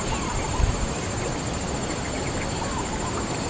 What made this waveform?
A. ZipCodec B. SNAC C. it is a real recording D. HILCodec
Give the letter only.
C